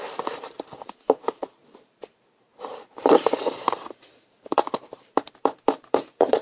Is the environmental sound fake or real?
fake